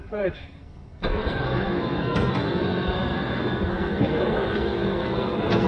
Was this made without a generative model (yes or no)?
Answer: no